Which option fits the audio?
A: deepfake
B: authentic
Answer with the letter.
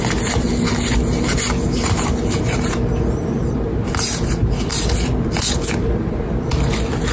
B